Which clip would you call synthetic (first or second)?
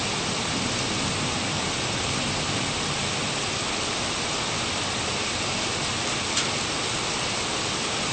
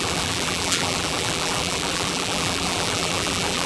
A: second